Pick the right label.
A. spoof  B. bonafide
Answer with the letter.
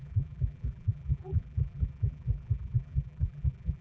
A